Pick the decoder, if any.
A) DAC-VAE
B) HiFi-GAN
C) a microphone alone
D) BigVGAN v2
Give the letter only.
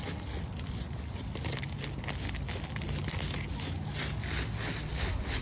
C